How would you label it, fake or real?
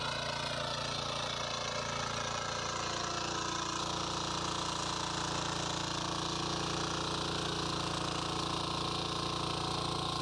real